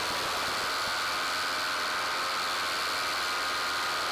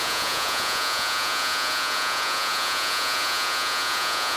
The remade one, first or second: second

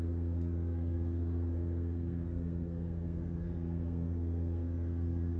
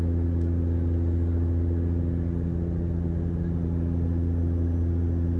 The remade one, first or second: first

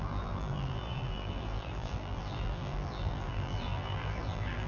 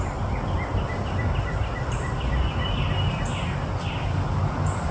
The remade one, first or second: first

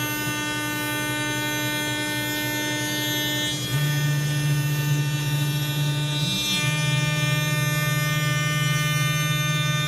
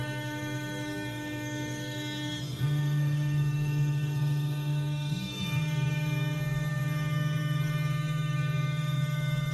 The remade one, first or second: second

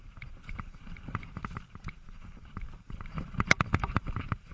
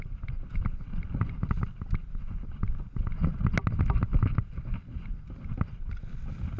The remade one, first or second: first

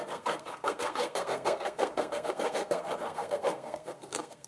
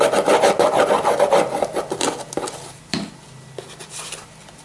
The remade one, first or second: first